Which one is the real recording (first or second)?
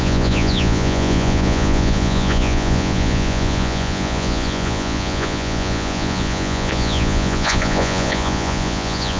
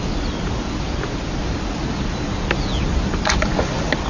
second